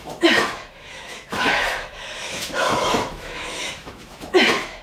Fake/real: fake